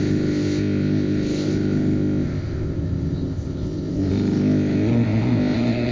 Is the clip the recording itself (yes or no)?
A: no